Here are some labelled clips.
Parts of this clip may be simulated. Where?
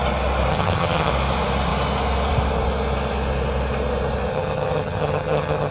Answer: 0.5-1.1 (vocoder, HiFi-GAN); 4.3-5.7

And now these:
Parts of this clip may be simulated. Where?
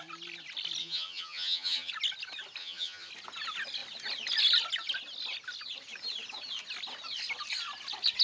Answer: 0.8-1.9 (vocoder, HiFi-GAN); 2.6-3.1